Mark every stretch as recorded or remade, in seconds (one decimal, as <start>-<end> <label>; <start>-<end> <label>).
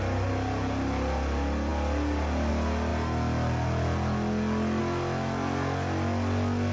0.0-6.7 recorded